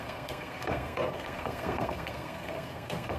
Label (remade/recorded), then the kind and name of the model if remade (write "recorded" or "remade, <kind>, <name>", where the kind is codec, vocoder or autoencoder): remade, codec, SNAC